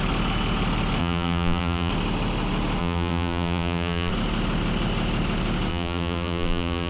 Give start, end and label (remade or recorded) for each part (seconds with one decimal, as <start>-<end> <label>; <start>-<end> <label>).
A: 0.0-1.0 recorded; 1.0-1.9 remade; 1.9-2.8 recorded; 2.8-4.1 remade; 4.1-5.7 recorded; 5.7-6.9 remade